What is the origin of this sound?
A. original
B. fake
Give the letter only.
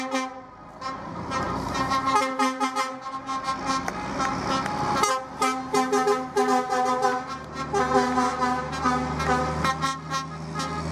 A